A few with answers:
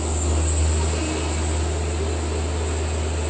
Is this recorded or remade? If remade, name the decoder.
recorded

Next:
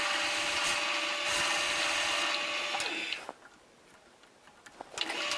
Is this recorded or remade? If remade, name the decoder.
recorded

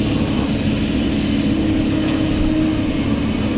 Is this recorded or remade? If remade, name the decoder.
recorded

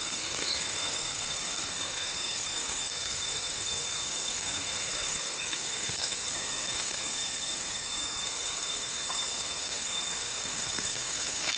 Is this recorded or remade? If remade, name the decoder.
remade, codec, SNAC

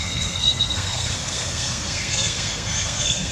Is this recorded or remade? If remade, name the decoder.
remade, codec, SNAC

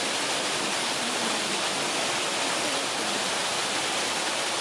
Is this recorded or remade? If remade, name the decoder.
recorded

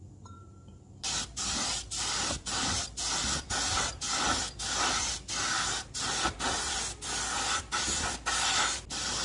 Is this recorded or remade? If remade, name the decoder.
recorded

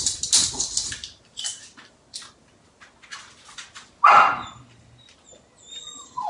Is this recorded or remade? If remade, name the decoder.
recorded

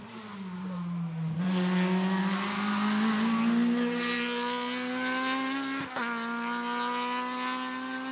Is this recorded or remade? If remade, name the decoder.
recorded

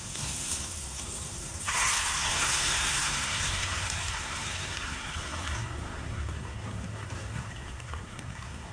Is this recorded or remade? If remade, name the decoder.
remade, codec, SNAC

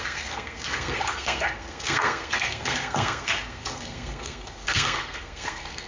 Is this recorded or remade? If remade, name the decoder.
remade, codec, SNAC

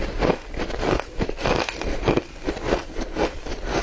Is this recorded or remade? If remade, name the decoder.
recorded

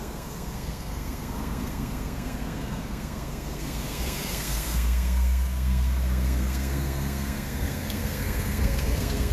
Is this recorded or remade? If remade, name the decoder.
remade, codec, SNAC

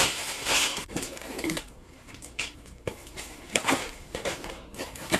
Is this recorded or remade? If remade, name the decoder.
remade, codec, SNAC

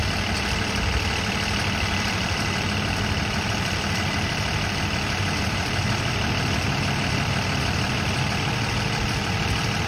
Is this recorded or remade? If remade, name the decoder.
recorded